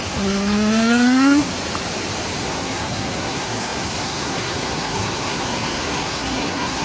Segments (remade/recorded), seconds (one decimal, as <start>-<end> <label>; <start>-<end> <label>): 0.0-1.5 remade; 1.5-2.4 recorded; 2.4-6.8 remade

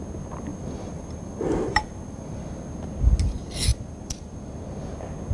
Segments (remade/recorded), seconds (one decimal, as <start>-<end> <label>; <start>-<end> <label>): 0.0-0.5 recorded; 0.5-2.6 remade; 2.6-3.7 recorded; 3.7-4.7 remade; 4.7-5.3 recorded

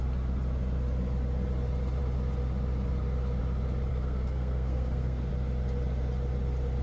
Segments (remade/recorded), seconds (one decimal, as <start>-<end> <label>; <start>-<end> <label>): 0.0-3.9 recorded; 3.9-5.3 remade; 5.3-6.8 recorded

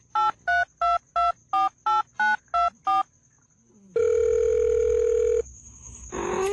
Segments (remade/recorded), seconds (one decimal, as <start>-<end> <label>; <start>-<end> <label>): 0.0-6.5 recorded